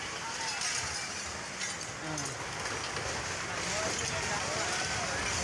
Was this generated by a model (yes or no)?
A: no